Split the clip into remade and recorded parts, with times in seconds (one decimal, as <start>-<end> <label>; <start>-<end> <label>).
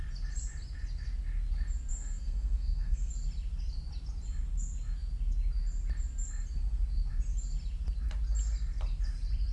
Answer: 0.0-1.9 recorded; 1.9-3.1 remade; 3.1-9.5 recorded